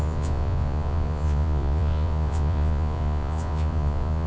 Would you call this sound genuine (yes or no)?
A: no